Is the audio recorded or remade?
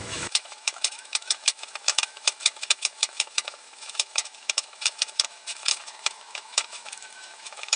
remade